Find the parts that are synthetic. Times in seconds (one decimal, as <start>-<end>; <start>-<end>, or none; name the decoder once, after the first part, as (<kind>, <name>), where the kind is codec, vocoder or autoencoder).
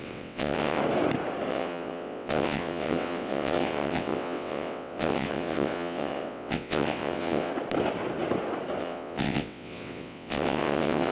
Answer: 0.0-0.8 (vocoder, WaveNeXt); 1.5-7.5; 8.8-11.1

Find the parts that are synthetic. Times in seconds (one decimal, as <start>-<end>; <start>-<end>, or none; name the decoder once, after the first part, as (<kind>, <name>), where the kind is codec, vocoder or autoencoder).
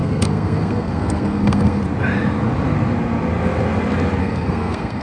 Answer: 0.0-1.8 (codec, SNAC); 4.2-5.0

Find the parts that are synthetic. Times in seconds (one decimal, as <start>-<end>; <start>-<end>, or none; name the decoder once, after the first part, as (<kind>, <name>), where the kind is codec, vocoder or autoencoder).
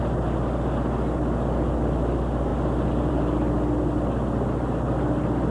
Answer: none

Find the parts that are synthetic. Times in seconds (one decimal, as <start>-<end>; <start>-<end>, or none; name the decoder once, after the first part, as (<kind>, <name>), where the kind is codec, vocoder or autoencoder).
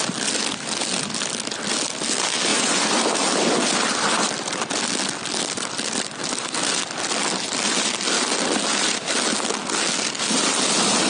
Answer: 2.5-3.0 (vocoder, Vocos)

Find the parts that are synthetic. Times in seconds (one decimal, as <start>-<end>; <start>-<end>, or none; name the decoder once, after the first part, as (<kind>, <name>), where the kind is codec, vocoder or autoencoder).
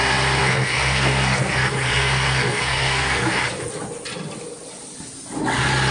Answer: 0.4-3.4 (codec, SNAC)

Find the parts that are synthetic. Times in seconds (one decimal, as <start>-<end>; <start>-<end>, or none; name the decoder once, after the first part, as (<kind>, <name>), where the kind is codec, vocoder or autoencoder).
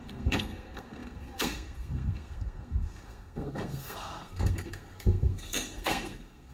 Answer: 0.0-6.5 (codec, SNAC)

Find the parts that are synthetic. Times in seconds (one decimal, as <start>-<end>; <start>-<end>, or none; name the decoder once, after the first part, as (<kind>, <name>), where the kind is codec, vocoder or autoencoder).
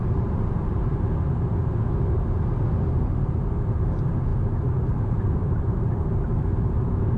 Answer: 0.0-0.8 (vocoder, BigVGAN v2); 3.0-7.2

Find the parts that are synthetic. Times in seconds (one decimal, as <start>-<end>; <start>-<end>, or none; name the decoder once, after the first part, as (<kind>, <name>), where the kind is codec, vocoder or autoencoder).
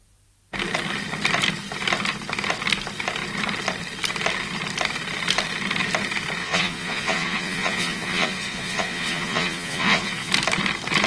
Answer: 6.4-10.3 (vocoder, Vocos)